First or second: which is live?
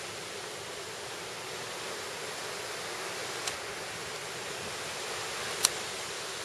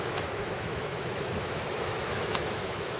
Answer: first